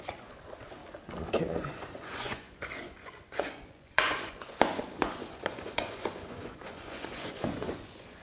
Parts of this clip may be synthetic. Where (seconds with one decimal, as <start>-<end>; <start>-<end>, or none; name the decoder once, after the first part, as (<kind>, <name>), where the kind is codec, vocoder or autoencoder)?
0.0-0.8 (vocoder, Vocos); 1.4-8.2